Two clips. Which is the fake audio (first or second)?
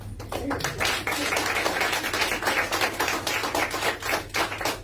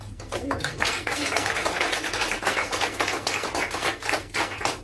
second